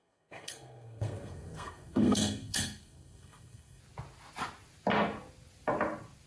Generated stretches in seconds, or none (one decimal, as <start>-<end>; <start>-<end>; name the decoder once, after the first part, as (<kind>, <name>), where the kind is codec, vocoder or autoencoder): 0.0-3.8 (codec, SNAC)

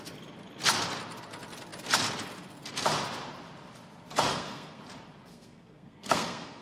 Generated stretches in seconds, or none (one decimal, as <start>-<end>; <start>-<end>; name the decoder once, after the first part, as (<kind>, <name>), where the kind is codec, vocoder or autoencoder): 4.3-4.8 (codec, SNAC); 5.3-6.6

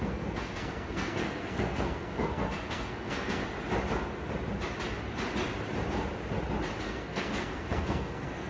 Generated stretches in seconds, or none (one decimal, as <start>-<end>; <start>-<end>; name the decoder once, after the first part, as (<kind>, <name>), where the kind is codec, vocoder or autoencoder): 0.0-3.4 (codec, SNAC); 6.8-8.5

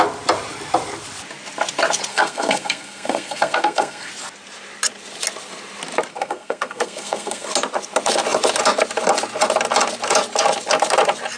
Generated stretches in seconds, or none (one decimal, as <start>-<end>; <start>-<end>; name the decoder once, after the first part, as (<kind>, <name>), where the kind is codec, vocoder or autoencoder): 2.1-4.1 (codec, SNAC); 6.1-7.5

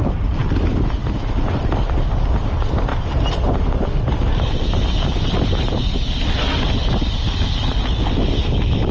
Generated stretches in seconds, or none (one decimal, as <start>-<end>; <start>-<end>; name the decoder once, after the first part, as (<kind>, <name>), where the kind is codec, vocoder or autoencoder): none

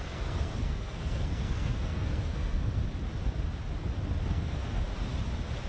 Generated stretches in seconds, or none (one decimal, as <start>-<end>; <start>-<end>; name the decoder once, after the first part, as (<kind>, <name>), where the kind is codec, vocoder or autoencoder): 0.0-2.8 (codec, SNAC); 4.3-4.9

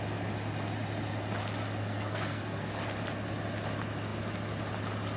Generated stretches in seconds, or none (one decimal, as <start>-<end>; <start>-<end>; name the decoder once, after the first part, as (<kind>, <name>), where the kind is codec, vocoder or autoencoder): 1.8-2.7 (codec, SNAC)